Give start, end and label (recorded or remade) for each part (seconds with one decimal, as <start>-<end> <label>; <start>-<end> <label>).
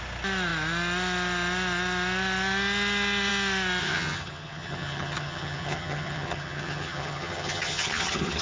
0.0-3.8 recorded; 3.8-8.4 remade